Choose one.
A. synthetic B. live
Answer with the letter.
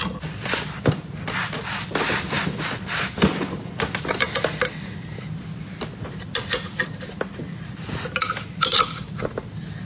B